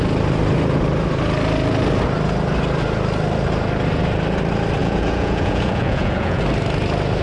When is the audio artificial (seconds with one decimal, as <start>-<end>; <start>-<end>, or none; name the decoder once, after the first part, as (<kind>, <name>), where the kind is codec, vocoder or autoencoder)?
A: 4.8-6.4 (vocoder, Vocos)